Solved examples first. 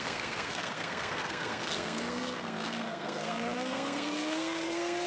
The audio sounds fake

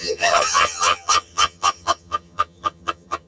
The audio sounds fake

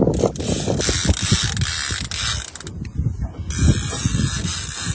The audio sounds real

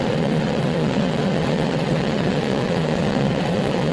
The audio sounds fake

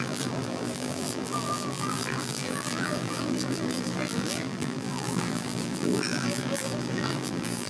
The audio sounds fake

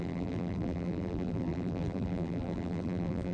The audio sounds fake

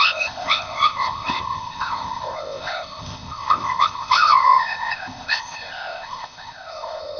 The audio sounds fake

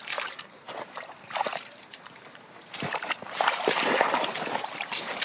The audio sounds fake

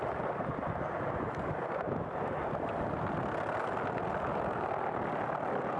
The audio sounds real